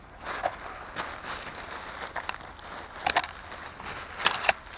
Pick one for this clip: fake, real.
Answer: real